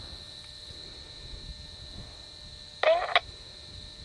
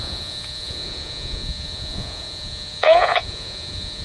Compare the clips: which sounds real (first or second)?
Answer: first